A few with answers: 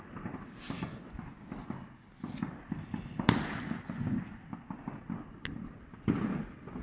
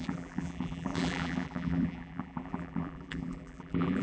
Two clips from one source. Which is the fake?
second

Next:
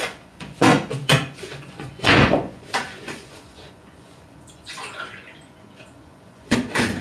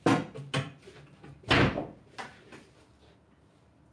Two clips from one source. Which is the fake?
first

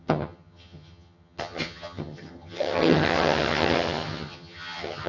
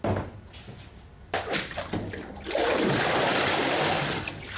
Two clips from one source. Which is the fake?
first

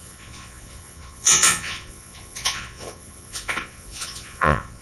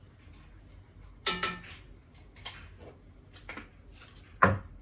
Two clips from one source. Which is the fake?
first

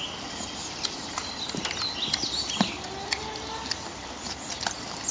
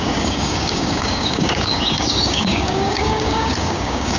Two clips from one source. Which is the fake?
second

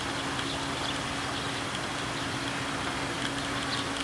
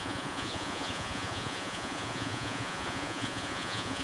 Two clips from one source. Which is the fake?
second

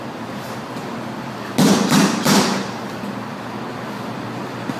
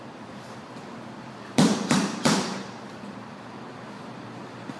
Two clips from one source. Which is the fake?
second